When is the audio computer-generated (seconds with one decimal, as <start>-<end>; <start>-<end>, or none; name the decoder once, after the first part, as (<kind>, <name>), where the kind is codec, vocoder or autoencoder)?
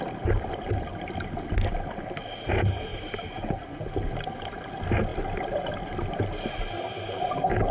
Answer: none